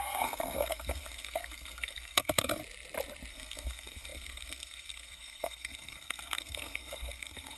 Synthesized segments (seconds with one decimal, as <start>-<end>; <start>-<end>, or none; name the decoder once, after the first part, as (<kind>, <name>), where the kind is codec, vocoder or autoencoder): 0.0-2.6 (codec, SNAC); 3.3-7.6